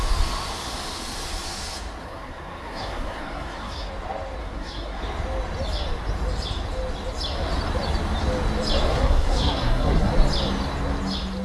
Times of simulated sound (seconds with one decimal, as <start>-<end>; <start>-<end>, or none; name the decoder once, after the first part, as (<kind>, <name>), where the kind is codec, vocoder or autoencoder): 2.0-3.9 (codec, SNAC); 4.4-5.0; 8.9-10.1